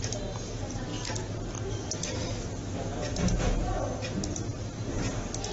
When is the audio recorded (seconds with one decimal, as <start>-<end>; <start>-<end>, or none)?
0.0-4.5; 5.0-5.5

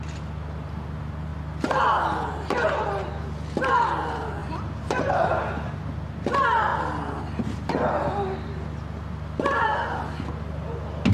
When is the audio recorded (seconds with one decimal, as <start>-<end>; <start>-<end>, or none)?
0.0-4.4; 5.3-11.1